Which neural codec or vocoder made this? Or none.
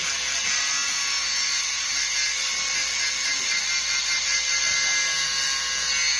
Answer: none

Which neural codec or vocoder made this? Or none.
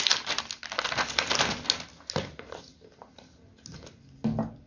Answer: none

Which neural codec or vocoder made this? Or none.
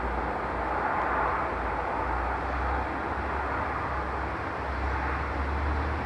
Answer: none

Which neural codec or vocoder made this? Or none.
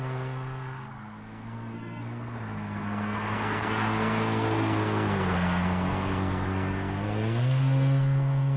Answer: codec, SNAC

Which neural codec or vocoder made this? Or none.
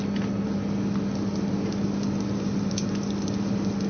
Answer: none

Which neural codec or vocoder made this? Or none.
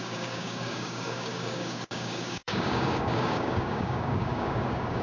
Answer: codec, DAC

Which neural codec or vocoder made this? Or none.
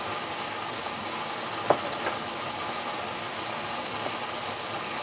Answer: none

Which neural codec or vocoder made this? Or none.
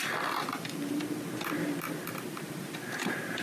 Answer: none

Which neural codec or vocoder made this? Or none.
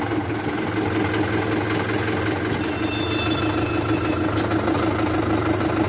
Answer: none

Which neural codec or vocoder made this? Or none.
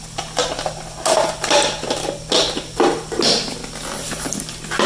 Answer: none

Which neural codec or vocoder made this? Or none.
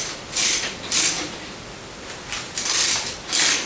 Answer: vocoder, BigVGAN v2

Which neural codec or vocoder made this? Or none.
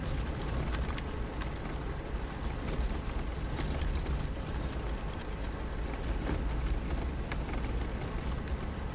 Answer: none